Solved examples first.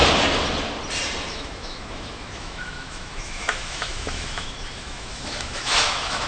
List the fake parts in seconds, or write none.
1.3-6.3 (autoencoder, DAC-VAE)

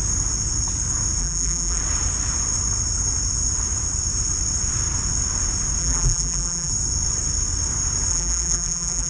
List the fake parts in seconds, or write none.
1.2-1.8 (vocoder, BigVGAN v2); 5.8-6.7; 8.1-9.1